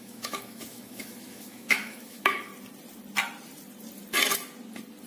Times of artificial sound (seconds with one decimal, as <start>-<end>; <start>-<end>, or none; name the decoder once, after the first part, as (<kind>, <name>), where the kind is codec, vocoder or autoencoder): 0.0-2.5 (autoencoder, DAC-VAE)